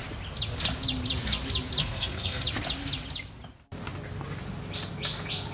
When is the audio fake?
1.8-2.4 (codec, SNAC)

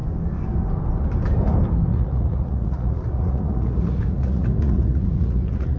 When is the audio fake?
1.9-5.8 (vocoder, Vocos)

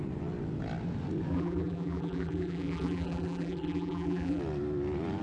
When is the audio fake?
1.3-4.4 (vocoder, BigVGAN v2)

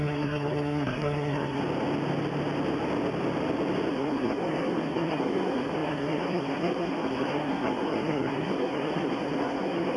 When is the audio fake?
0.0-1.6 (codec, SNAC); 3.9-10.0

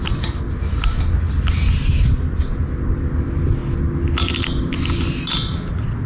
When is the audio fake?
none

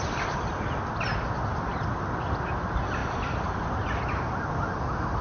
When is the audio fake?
none

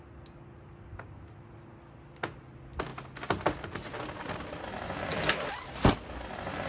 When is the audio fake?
none